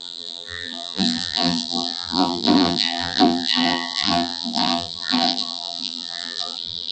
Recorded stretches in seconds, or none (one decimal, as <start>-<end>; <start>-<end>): none